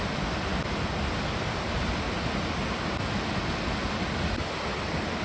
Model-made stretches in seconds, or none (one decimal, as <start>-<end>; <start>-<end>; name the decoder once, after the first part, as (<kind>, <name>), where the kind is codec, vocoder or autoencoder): none